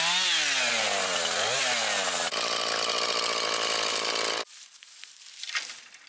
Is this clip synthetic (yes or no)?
no